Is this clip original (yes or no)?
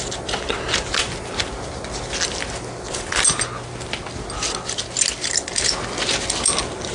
yes